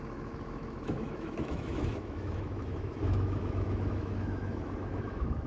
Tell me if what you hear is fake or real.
fake